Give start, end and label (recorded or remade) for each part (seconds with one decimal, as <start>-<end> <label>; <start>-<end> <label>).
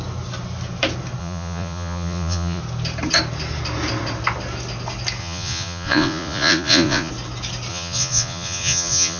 0.0-1.2 recorded; 1.2-2.6 remade; 2.6-5.2 recorded; 5.2-7.1 remade; 7.1-7.7 recorded; 7.7-9.2 remade